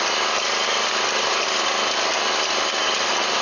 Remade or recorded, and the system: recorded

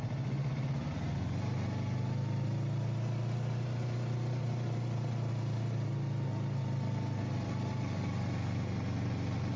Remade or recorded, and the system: recorded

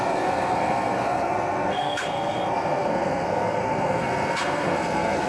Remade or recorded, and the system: remade, codec, SNAC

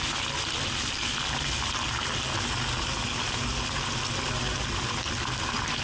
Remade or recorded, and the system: recorded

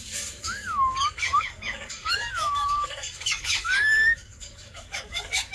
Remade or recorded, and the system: remade, codec, DAC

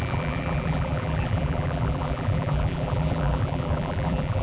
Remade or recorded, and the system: remade, vocoder, BigVGAN v2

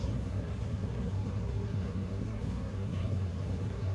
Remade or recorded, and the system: remade, codec, SNAC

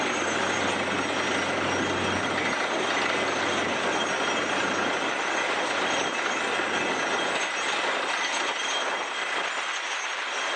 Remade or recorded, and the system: recorded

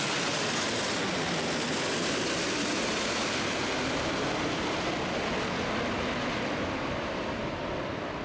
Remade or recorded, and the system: recorded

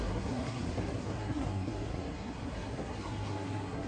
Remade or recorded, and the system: remade, codec, SNAC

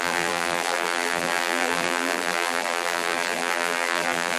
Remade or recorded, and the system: remade, vocoder, BigVGAN v2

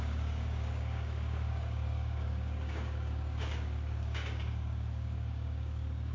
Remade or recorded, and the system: remade, codec, DAC